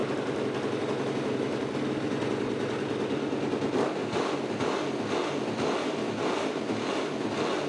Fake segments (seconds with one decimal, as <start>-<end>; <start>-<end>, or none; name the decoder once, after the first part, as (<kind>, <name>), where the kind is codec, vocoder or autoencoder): none